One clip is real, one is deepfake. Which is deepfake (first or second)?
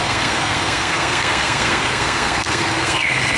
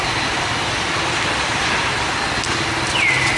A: first